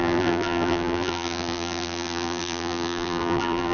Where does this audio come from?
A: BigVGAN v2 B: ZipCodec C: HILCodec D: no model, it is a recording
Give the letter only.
A